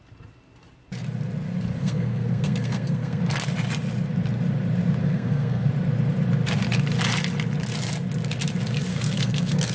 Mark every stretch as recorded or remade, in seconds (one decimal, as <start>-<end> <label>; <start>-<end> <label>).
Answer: 0.0-1.8 recorded; 1.8-3.2 remade; 3.2-5.0 recorded; 5.0-5.7 remade; 5.7-8.9 recorded; 8.9-9.7 remade